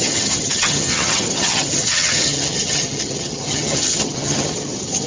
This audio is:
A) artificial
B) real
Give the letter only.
A